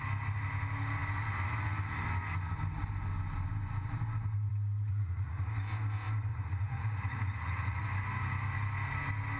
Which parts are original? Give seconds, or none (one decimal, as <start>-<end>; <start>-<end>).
0.0-4.9; 5.5-6.3; 7.8-9.4